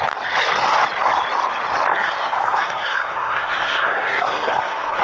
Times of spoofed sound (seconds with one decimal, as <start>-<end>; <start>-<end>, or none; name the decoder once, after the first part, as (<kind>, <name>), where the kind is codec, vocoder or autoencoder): 1.9-5.0 (codec, SNAC)